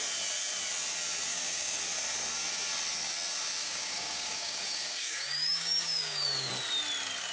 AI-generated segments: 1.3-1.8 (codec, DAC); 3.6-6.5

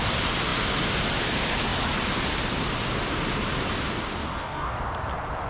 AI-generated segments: 4.2-4.8 (codec, DAC)

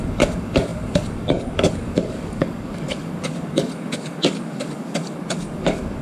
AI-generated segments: 0.0-6.0 (codec, DAC)

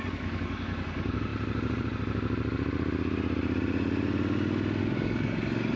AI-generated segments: 0.0-1.3 (codec, DAC); 4.8-5.8

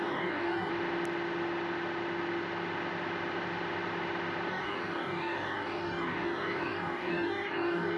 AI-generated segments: 0.0-0.7 (codec, DAC); 4.5-8.0

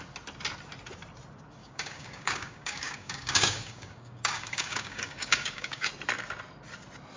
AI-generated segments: 1.6-5.9 (codec, DAC)